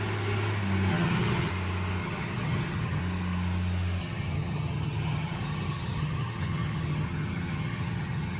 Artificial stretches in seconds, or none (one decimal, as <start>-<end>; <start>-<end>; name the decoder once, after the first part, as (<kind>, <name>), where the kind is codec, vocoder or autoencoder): 0.9-1.5 (vocoder, HiFi-GAN); 2.0-3.0; 4.0-8.4